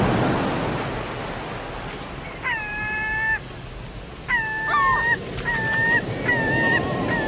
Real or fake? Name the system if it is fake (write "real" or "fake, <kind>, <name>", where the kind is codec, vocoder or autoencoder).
real